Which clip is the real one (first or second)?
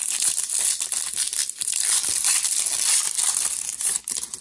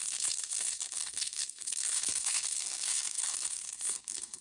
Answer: first